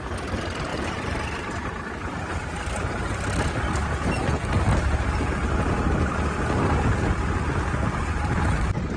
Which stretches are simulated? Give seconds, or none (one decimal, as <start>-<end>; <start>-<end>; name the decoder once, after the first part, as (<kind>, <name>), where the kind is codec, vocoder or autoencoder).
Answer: 0.7-3.5 (vocoder, BigVGAN v2)